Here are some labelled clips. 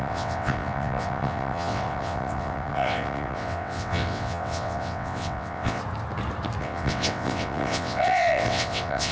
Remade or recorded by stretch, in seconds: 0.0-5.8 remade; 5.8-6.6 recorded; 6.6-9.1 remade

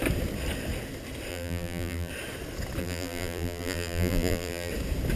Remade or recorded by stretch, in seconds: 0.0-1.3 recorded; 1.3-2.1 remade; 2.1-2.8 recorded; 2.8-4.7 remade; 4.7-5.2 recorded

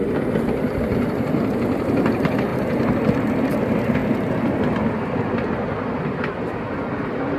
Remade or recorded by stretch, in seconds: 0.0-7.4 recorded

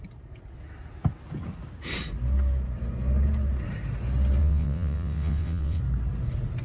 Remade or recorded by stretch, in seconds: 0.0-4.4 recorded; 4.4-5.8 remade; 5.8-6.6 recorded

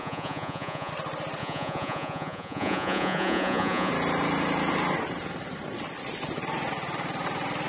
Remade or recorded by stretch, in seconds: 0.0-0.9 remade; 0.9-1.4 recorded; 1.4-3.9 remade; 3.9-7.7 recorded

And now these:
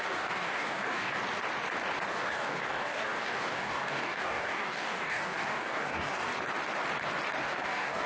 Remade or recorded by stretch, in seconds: 0.0-1.2 remade; 1.2-2.1 recorded; 2.1-6.3 remade; 6.3-7.4 recorded; 7.4-8.1 remade